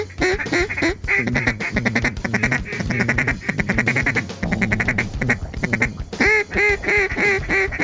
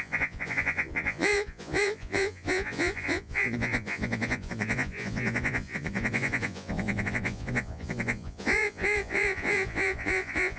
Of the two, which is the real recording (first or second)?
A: first